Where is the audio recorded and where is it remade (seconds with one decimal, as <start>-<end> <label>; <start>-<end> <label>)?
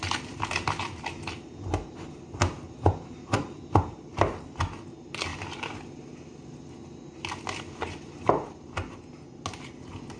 0.0-10.2 recorded